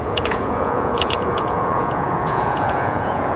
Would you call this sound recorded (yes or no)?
no